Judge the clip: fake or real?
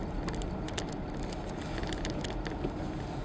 real